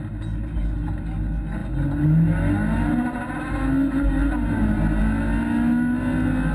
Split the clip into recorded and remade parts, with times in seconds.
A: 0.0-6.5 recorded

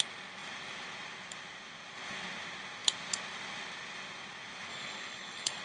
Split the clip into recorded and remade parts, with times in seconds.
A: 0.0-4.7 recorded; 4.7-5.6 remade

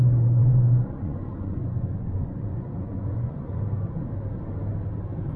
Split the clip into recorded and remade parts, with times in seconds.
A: 0.0-0.4 recorded; 0.4-3.6 remade; 3.6-5.4 recorded